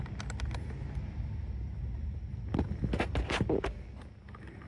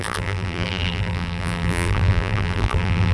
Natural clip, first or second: first